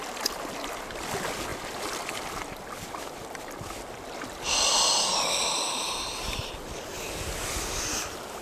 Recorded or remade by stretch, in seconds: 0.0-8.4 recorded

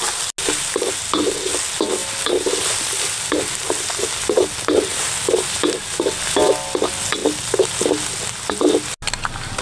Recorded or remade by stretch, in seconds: 0.0-9.6 recorded

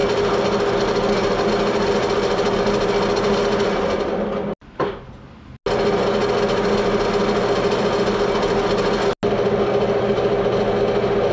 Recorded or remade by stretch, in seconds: 0.0-11.3 recorded

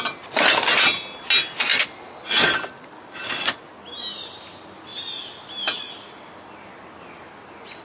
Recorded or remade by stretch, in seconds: 0.0-7.8 recorded

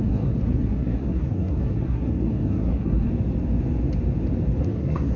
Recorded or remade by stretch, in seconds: 0.0-3.1 remade; 3.1-4.6 recorded; 4.6-5.2 remade

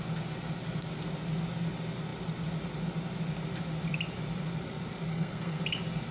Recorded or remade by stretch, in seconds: 0.0-5.1 recorded; 5.1-5.6 remade; 5.6-6.1 recorded